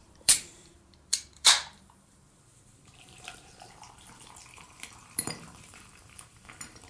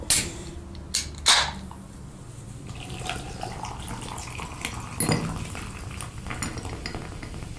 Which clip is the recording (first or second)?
second